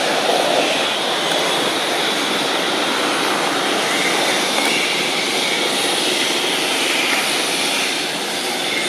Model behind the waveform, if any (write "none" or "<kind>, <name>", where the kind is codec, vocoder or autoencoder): none